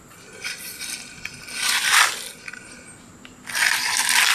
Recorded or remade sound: recorded